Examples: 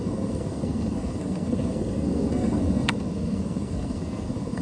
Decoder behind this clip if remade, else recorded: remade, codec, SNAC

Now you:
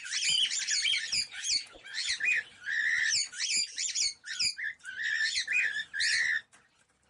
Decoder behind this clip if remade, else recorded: recorded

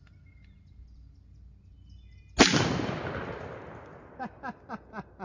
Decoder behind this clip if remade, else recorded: recorded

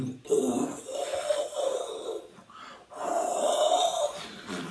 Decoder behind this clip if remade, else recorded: recorded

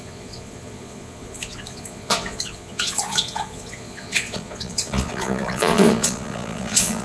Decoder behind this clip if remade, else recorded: remade, vocoder, Vocos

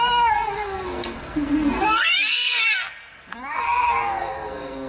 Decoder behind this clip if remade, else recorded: remade, codec, SNAC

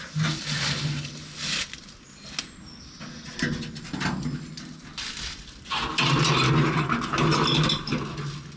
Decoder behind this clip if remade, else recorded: recorded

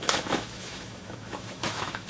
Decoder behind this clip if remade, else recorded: remade, autoencoder, DAC-VAE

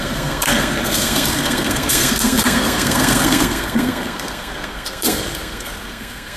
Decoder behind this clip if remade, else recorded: remade, codec, SNAC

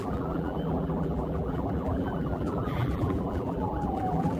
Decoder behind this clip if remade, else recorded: remade, vocoder, BigVGAN v2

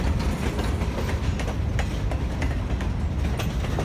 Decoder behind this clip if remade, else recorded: recorded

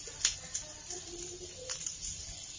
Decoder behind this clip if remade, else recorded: recorded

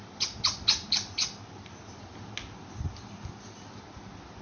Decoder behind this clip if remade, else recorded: recorded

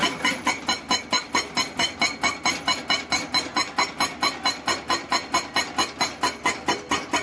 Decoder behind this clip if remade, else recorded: recorded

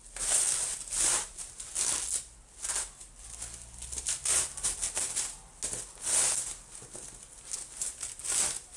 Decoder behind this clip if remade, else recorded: recorded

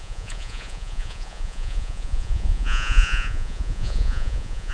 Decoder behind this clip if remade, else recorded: remade, vocoder, Vocos